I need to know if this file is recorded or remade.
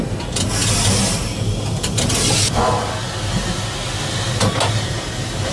recorded